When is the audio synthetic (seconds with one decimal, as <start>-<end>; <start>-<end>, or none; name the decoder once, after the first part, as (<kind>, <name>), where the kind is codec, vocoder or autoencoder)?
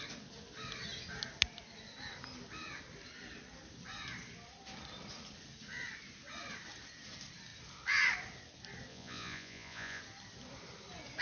8.9-10.0 (vocoder, Vocos)